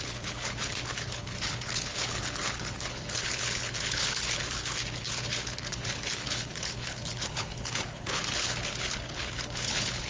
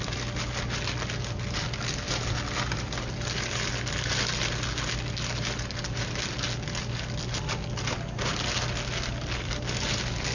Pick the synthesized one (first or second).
first